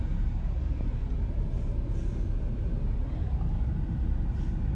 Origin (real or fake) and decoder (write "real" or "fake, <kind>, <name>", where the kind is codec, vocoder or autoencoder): real